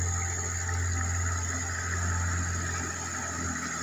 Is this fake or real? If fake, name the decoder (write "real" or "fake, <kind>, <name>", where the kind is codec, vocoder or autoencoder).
real